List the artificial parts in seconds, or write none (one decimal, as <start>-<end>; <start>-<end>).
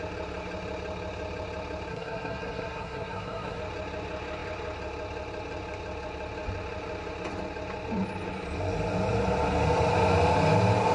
1.9-3.6